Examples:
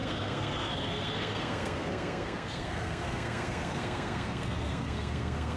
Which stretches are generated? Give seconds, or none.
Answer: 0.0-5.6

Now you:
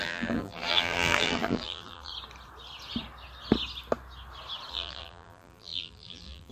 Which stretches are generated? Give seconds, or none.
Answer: 0.0-2.1; 4.7-6.5

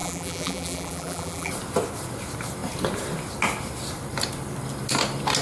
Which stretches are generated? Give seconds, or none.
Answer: 0.0-1.5

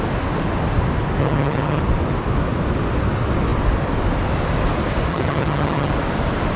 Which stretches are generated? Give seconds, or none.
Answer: 1.2-1.8; 5.1-5.9

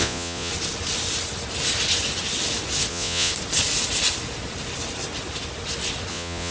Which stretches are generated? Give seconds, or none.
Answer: 0.0-0.5; 2.9-3.3; 6.1-6.5

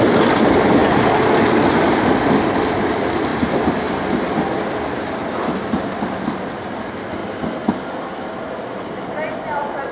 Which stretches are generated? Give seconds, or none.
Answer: none